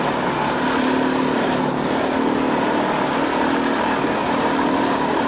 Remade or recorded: recorded